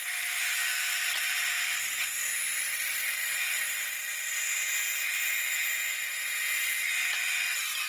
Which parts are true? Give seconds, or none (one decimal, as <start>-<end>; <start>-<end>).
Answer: 0.0-1.1; 2.0-2.7; 4.1-7.9